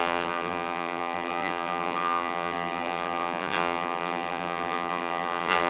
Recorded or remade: remade